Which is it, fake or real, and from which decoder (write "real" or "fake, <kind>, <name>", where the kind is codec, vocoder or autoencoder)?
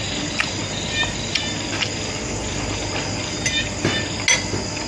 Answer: real